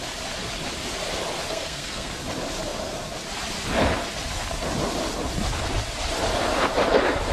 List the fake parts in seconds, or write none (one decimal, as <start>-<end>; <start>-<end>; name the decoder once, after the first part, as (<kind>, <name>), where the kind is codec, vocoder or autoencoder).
1.5-2.1 (codec, SNAC)